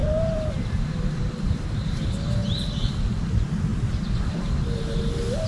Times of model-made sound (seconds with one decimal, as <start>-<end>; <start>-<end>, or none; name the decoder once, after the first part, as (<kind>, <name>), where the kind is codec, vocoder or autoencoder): 0.0-2.0 (vocoder, BigVGAN v2)